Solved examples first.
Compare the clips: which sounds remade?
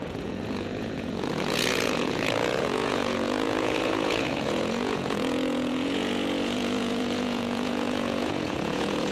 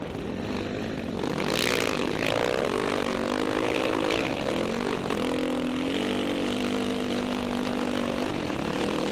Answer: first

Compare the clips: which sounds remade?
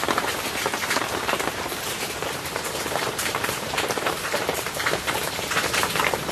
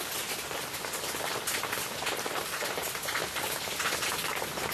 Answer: first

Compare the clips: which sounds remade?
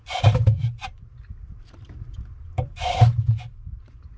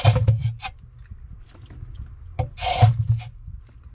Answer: first